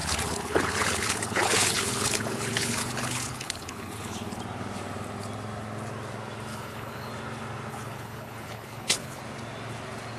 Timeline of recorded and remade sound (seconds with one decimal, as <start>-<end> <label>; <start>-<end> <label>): 0.0-4.4 remade; 4.4-6.5 recorded; 6.5-7.1 remade; 7.1-7.7 recorded; 7.7-9.2 remade; 9.2-10.2 recorded